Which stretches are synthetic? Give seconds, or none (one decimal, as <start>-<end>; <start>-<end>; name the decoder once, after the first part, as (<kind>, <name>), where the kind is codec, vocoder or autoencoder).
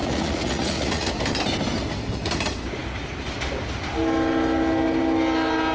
0.0-1.1 (vocoder, Vocos)